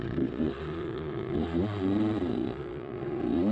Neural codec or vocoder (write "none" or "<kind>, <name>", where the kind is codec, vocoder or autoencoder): vocoder, Vocos